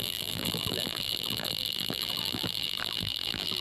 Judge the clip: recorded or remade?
remade